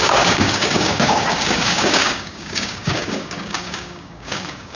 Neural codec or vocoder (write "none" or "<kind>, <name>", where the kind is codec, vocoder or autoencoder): codec, DAC